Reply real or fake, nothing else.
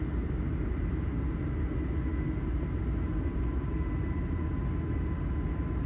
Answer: real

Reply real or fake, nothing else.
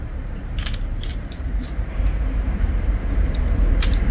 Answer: fake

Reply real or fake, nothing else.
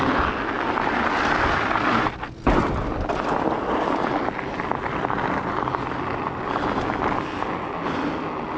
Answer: real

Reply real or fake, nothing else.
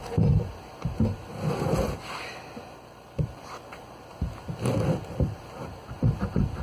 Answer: real